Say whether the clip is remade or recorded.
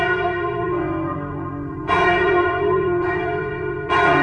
remade